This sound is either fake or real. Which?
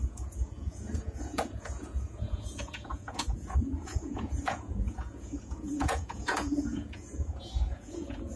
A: fake